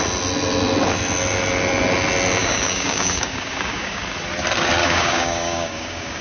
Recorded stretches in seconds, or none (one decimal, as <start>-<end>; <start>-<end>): 0.0-2.4; 4.0-4.8